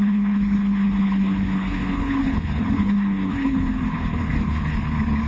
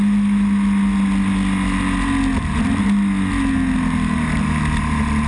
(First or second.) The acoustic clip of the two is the second